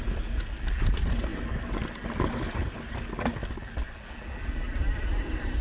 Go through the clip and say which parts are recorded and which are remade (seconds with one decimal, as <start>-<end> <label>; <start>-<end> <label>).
0.0-5.6 recorded